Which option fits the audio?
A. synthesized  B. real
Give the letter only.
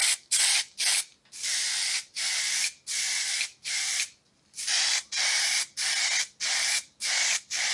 B